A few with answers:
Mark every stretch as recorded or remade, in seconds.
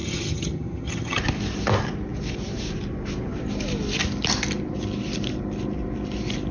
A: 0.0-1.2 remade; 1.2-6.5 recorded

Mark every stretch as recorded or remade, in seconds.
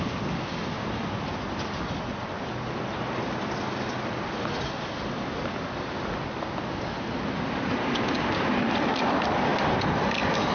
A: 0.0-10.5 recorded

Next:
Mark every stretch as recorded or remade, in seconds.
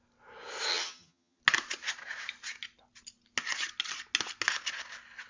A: 0.0-0.7 recorded; 0.7-1.4 remade; 1.4-5.3 recorded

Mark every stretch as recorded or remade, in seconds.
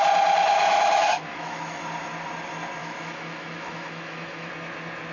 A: 0.0-0.5 recorded; 0.5-1.8 remade; 1.8-2.8 recorded; 2.8-4.5 remade; 4.5-5.1 recorded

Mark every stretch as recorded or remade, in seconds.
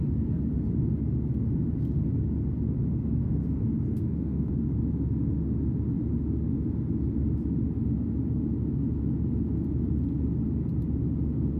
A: 0.0-3.2 recorded; 3.2-4.5 remade; 4.5-11.6 recorded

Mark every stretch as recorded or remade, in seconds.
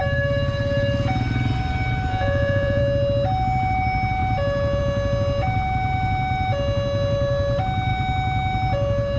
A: 0.0-2.1 recorded; 2.1-2.8 remade; 2.8-9.2 recorded